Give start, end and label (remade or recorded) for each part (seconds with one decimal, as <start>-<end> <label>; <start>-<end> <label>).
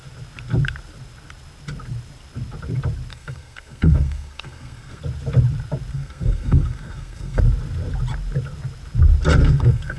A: 0.0-3.1 recorded; 3.1-5.0 remade; 5.0-5.9 recorded; 5.9-7.4 remade; 7.4-9.4 recorded; 9.4-10.0 remade